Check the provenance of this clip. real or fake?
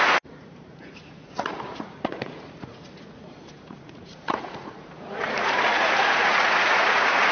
fake